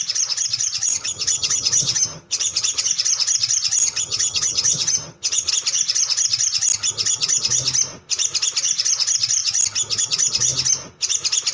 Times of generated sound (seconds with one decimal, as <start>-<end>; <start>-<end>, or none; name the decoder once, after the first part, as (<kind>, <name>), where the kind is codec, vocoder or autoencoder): 0.9-2.9 (vocoder, HiFi-GAN); 3.8-5.5